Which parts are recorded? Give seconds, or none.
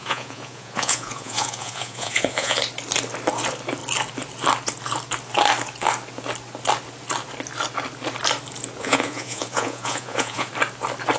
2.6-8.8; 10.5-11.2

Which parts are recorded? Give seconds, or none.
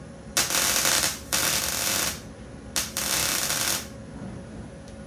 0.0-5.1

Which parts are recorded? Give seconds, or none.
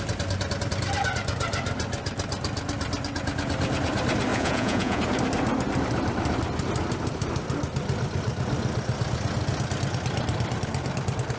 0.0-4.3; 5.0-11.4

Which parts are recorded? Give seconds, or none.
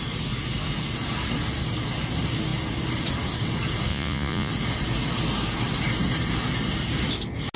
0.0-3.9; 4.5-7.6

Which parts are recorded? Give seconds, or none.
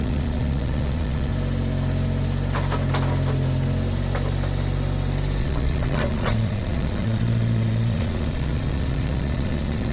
1.3-5.4